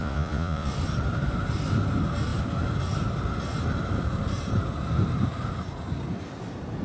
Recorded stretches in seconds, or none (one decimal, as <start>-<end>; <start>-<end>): 0.7-6.8